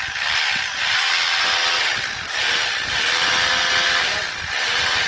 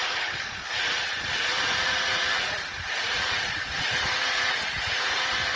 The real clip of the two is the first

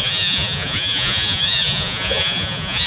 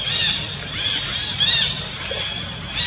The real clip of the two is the second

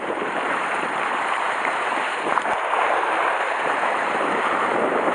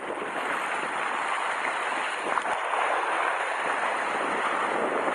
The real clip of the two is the second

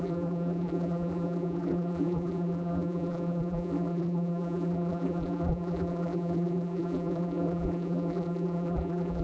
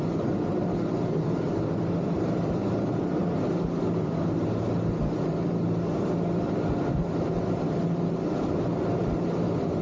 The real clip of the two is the second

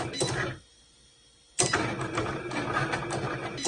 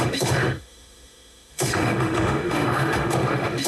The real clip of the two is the first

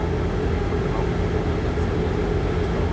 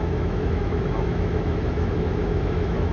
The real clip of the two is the first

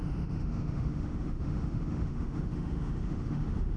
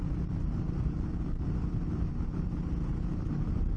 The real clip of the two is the second